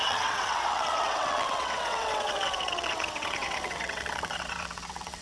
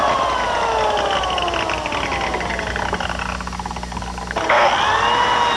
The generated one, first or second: first